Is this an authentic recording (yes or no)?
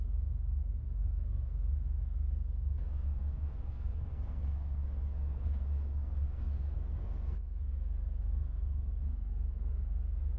no